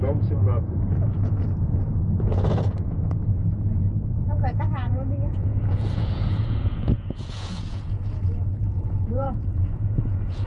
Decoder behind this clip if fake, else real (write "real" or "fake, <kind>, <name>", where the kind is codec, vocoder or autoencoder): fake, vocoder, Vocos